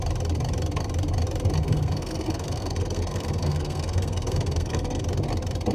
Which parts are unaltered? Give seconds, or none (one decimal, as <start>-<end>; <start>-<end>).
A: 0.0-1.6; 5.0-5.7